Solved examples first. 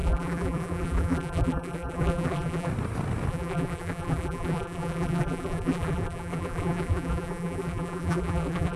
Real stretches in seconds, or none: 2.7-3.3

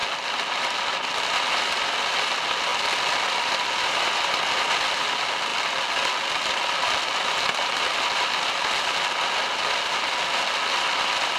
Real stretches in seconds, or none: 0.0-11.4

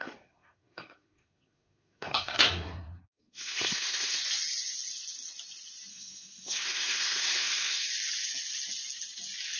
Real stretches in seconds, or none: 4.2-5.9; 7.9-9.6

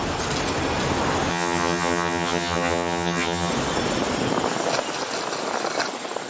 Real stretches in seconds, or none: 0.0-1.3; 3.5-6.3